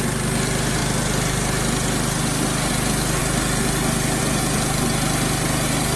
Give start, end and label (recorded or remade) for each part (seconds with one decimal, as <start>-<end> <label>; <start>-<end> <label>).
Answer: 0.0-6.0 recorded